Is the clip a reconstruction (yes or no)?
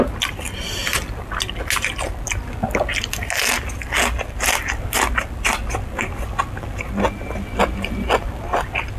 no